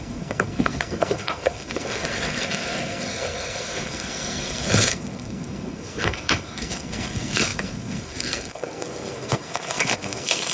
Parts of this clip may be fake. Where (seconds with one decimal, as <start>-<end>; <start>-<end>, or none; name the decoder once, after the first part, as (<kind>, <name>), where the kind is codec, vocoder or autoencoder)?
0.0-10.5 (codec, SNAC)